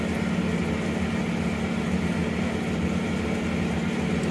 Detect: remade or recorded recorded